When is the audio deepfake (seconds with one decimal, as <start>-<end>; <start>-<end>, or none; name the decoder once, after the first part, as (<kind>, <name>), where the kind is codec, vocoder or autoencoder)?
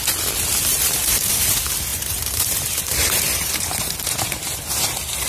0.7-1.5 (vocoder, BigVGAN v2); 1.9-4.2